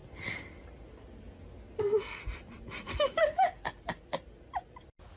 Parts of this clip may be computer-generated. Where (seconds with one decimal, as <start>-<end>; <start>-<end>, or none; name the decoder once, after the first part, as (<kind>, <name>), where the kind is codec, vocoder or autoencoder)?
1.8-2.2 (codec, SNAC)